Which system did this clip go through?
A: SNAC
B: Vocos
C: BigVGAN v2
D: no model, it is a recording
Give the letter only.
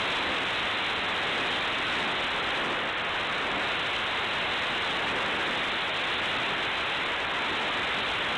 D